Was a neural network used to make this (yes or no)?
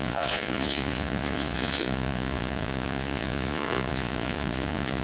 yes